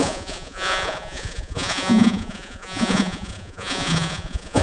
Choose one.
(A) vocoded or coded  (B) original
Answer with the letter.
A